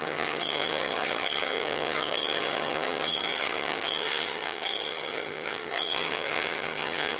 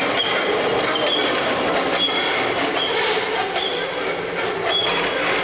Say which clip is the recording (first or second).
second